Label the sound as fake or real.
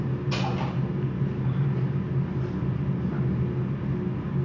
real